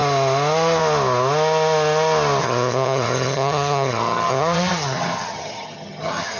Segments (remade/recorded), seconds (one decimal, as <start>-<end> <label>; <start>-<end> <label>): 0.0-2.4 recorded; 2.4-6.4 remade